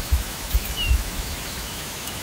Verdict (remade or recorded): remade